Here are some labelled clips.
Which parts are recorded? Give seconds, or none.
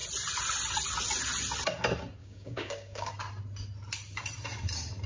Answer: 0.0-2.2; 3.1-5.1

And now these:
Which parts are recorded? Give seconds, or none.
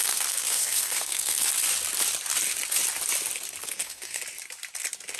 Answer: 1.5-3.6; 4.2-5.2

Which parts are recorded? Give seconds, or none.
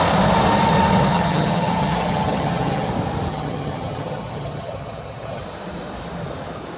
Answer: 0.0-1.1; 2.9-3.3; 5.4-6.8